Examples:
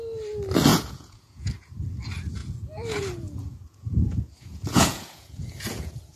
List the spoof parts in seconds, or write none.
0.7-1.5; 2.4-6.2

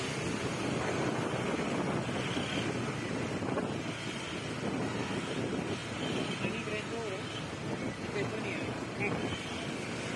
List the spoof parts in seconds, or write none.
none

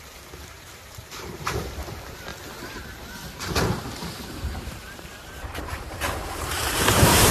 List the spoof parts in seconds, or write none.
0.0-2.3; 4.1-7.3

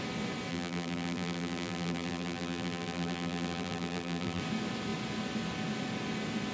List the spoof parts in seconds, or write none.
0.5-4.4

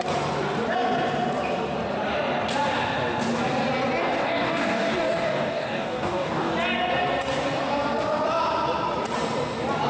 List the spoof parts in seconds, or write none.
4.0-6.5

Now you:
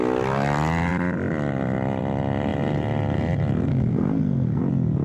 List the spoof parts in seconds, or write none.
3.7-4.6